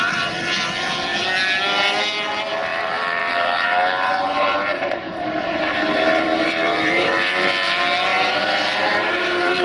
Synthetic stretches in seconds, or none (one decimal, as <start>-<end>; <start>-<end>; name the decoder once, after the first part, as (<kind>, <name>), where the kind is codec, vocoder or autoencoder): 2.7-7.5 (vocoder, BigVGAN v2); 8.1-9.6